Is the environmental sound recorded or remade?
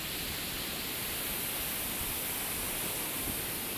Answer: recorded